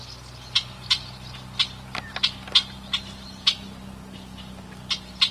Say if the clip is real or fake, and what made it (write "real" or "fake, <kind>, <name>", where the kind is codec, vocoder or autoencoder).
real